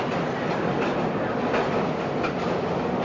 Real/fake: real